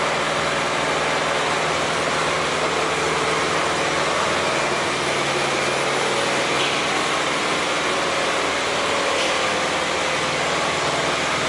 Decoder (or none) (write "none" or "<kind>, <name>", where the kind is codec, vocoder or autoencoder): none